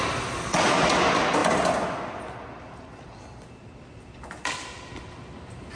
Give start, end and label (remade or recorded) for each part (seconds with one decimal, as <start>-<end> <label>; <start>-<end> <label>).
0.0-5.8 recorded